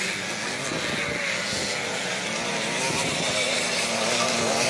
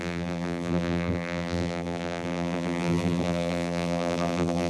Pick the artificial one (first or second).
second